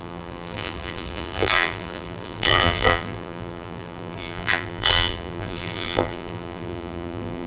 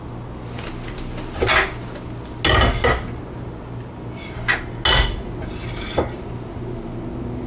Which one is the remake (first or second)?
first